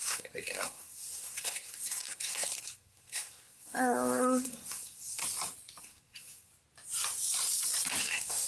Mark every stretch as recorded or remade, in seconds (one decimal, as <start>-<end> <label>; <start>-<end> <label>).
0.0-5.2 remade; 5.2-5.8 recorded; 5.8-6.5 remade; 6.5-8.0 recorded; 8.0-8.5 remade